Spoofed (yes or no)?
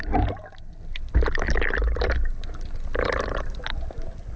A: no